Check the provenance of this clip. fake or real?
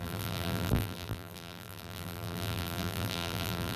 fake